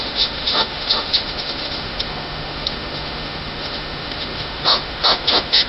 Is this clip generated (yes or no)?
yes